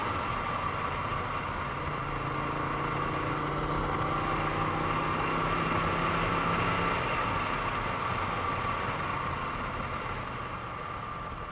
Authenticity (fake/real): real